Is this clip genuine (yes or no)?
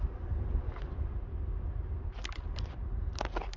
yes